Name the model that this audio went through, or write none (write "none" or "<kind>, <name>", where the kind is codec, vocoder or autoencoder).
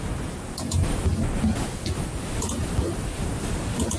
none